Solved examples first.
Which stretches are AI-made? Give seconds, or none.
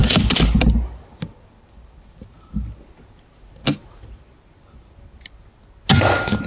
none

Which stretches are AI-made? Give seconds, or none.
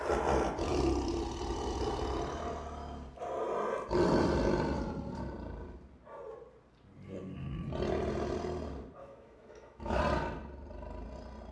9.0-10.0 (autoencoder, DAC-VAE)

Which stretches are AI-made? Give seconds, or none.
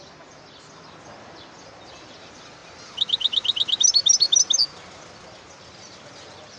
none